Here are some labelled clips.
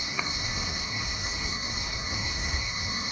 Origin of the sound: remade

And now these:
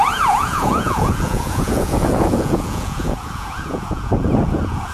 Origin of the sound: remade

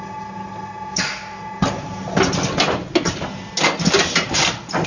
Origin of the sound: recorded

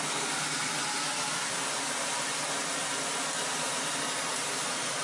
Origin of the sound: recorded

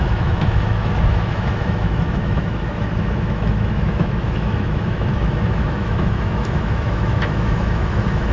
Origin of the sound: remade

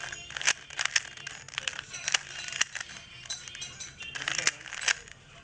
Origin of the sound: recorded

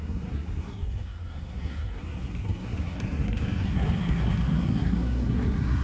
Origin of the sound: remade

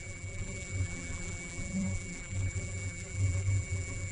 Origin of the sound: remade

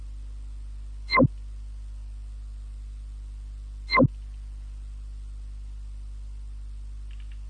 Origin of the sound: recorded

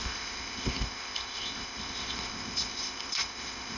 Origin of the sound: remade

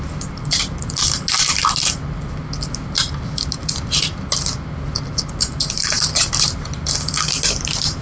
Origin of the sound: recorded